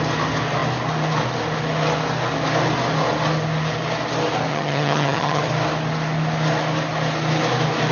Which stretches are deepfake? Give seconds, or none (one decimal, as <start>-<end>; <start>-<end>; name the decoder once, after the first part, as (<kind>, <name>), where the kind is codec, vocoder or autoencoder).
4.5-5.4 (vocoder, HiFi-GAN)